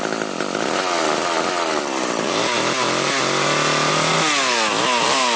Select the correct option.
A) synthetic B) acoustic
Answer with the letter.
B